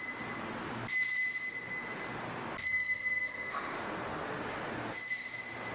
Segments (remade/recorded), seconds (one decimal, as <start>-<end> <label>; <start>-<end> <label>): 0.0-2.6 recorded; 2.6-3.8 remade; 3.8-5.7 recorded